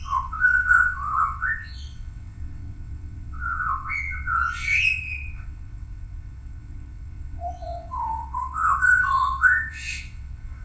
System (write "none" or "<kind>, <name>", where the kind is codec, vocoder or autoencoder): vocoder, WaveNeXt